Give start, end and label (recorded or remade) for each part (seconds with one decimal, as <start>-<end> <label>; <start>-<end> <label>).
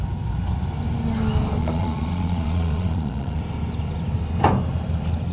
0.0-1.6 recorded; 1.6-3.4 remade; 3.4-5.3 recorded